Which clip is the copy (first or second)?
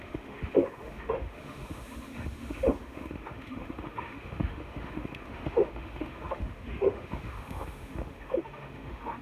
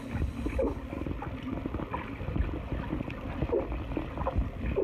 first